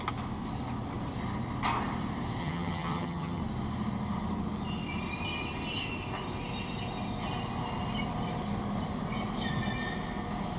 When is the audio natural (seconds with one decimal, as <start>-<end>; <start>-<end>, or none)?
0.0-2.4; 3.4-10.6